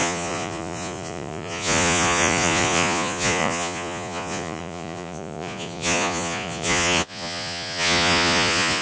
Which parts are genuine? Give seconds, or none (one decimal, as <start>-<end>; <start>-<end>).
none